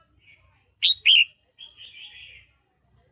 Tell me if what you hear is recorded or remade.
recorded